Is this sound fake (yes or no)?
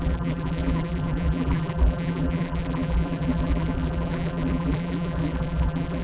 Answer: yes